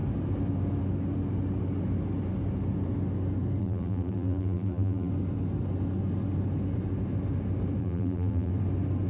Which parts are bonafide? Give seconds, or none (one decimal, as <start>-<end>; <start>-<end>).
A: 0.0-3.6; 5.1-7.8; 8.5-9.1